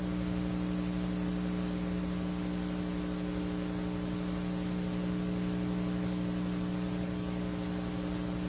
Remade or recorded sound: recorded